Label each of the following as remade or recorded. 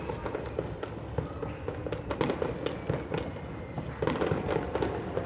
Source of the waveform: recorded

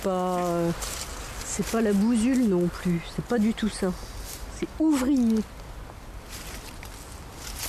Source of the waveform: recorded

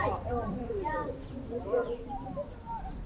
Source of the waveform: remade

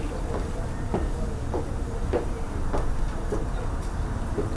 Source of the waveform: recorded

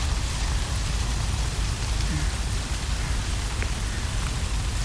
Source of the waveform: recorded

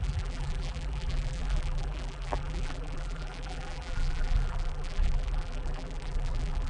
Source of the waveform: remade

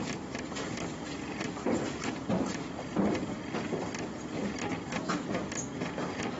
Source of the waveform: recorded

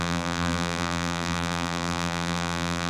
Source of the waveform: remade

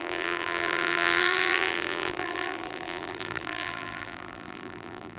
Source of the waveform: remade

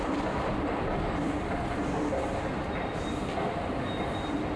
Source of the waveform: remade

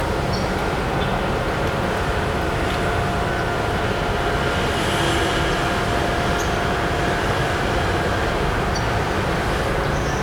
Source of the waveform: recorded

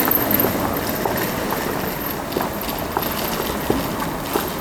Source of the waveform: recorded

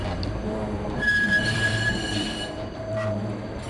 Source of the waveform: remade